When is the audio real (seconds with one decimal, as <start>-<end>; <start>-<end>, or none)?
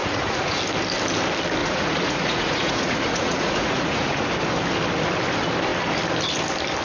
0.6-1.6; 4.3-6.8